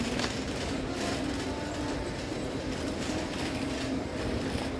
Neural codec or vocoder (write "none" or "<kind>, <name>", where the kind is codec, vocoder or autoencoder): vocoder, BigVGAN v2